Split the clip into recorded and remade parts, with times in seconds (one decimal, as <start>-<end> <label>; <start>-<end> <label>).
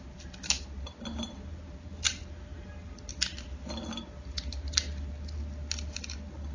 0.0-6.5 recorded